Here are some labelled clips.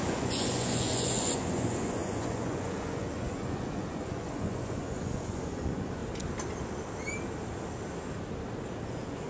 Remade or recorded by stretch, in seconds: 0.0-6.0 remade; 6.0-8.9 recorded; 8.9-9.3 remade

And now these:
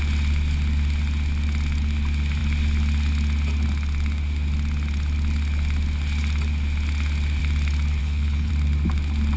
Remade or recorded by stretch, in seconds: 0.0-8.0 recorded; 8.0-8.5 remade; 8.5-9.4 recorded

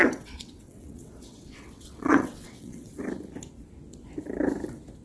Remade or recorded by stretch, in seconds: 0.0-3.0 remade; 3.0-5.0 recorded

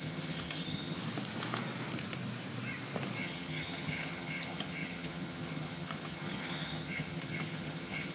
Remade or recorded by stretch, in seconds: 0.0-1.0 remade; 1.0-3.2 recorded; 3.2-8.1 remade